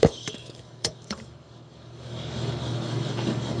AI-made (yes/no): yes